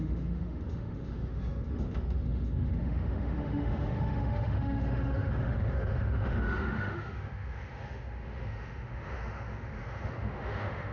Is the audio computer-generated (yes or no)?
yes